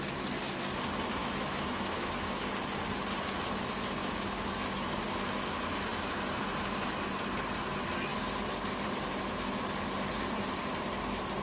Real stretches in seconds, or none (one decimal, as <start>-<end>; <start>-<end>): 0.0-1.2; 2.5-4.0; 4.9-11.4